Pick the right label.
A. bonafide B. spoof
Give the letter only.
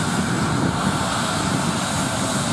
A